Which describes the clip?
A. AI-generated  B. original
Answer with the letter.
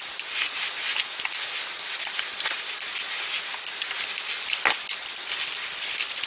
B